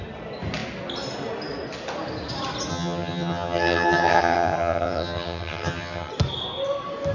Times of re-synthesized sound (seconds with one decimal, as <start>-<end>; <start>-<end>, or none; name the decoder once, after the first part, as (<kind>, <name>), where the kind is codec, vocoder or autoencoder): 2.7-6.1 (vocoder, HiFi-GAN)